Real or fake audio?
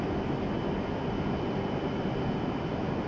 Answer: fake